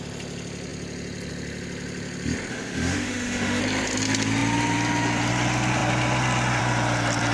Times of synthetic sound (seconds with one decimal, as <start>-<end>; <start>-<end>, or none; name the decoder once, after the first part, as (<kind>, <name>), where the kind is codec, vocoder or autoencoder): 2.5-3.6 (autoencoder, DAC-VAE)